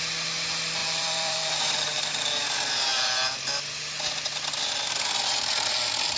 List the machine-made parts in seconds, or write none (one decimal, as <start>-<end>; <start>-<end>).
0.8-2.0